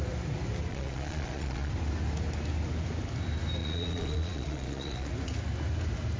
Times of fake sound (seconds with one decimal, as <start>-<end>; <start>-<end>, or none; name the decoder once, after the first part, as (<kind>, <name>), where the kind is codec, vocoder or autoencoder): 0.7-1.7 (vocoder, Vocos); 3.6-5.1